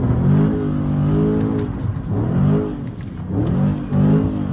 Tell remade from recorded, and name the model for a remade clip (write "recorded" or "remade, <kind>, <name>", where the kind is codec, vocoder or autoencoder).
recorded